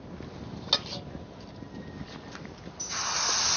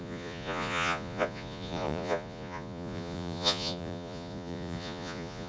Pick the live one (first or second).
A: first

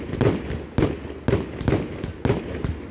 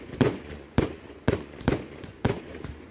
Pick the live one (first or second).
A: first